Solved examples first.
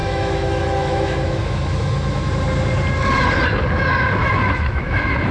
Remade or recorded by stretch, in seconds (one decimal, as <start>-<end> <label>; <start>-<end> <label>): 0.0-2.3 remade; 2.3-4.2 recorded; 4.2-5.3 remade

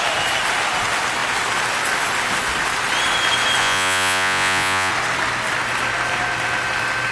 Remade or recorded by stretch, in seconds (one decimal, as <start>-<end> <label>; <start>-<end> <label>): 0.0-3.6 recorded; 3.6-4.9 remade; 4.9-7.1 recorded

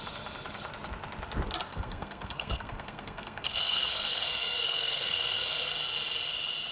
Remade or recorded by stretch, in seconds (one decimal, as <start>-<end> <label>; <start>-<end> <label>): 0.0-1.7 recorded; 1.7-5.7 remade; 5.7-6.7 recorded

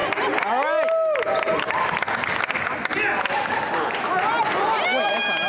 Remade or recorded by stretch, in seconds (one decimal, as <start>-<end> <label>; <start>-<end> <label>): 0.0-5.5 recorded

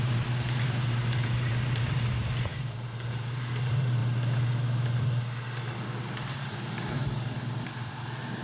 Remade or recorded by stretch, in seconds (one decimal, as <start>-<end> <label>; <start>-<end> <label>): 0.0-4.0 remade; 4.0-6.5 recorded; 6.5-7.0 remade; 7.0-8.0 recorded; 8.0-8.4 remade

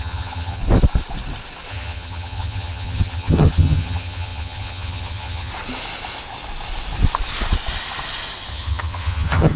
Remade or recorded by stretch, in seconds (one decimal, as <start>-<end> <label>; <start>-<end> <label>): 0.0-0.6 remade; 0.6-1.7 recorded; 1.7-5.5 remade; 5.5-8.5 recorded; 8.5-9.6 remade